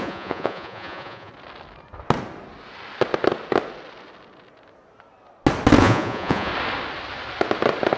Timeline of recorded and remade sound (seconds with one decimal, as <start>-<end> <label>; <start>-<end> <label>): 0.0-1.3 remade; 1.3-5.8 recorded; 5.8-6.5 remade; 6.5-8.0 recorded